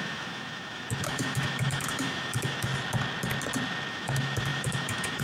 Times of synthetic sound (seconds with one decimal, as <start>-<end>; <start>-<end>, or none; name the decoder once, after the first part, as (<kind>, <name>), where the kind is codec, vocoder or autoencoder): 0.0-2.7 (autoencoder, DAC-VAE); 3.9-5.2